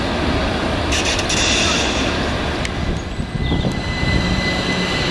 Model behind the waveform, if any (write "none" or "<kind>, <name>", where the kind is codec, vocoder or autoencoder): none